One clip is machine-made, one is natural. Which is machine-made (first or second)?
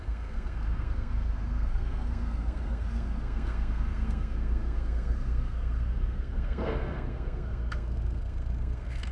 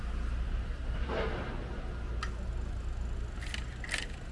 first